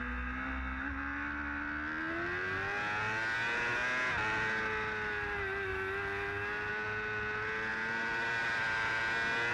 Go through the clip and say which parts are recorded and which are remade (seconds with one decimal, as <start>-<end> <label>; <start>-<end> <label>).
0.0-7.7 recorded; 7.7-9.0 remade; 9.0-9.5 recorded